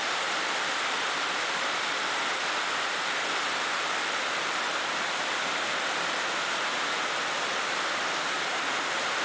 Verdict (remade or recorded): remade